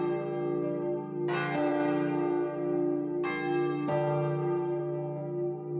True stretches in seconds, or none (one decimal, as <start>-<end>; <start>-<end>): 0.0-5.8